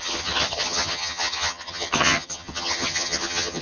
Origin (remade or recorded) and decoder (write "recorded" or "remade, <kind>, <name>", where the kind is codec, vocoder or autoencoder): remade, vocoder, HiFi-GAN